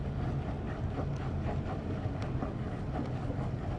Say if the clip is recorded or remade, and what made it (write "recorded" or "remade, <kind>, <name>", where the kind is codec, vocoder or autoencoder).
recorded